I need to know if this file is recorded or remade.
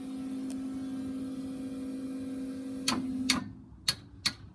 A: recorded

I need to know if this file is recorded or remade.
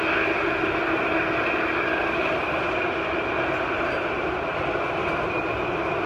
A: recorded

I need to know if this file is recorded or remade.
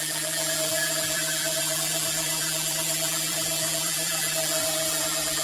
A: remade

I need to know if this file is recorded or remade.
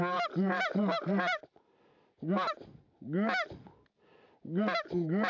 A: recorded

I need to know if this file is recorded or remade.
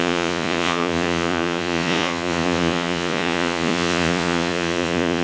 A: remade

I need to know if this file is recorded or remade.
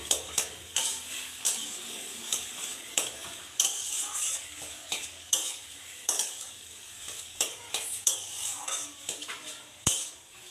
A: remade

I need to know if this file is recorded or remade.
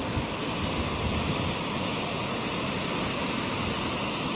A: recorded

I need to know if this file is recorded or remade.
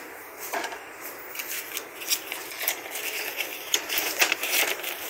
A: remade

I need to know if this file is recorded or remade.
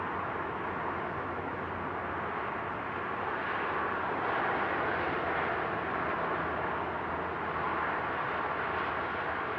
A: recorded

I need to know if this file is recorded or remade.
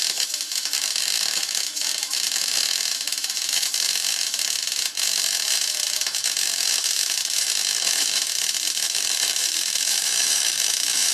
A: remade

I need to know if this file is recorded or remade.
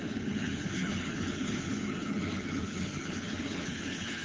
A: remade